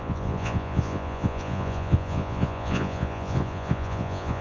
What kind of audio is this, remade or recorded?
remade